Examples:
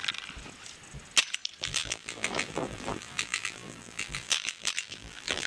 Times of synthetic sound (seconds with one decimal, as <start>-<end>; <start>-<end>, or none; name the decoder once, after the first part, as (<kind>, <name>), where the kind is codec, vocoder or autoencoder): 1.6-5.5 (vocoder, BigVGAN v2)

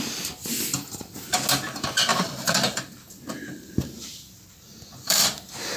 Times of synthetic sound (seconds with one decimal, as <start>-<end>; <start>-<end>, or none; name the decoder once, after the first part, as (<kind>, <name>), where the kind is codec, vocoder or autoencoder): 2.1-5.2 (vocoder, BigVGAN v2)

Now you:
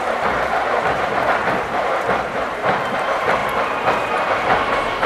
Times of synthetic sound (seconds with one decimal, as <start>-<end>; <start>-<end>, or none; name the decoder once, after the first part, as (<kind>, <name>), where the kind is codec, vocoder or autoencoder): 0.0-5.1 (vocoder, BigVGAN v2)

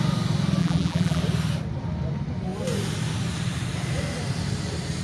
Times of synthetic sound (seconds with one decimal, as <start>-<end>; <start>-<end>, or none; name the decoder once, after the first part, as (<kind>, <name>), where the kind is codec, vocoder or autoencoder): 0.6-1.2 (vocoder, BigVGAN v2)